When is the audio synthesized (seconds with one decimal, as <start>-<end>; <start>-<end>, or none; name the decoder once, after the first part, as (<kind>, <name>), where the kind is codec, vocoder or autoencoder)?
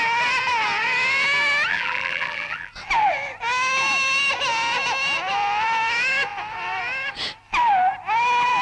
1.7-2.7 (vocoder, BigVGAN v2)